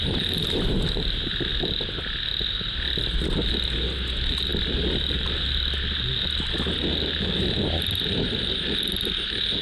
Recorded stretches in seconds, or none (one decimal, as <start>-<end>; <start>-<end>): 0.0-1.5; 2.2-9.6